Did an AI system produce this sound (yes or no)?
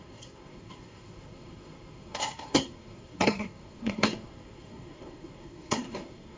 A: yes